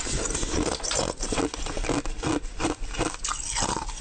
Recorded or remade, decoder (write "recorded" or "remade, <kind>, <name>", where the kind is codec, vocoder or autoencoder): recorded